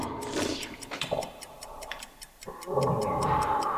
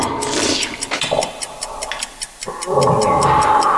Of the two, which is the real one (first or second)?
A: second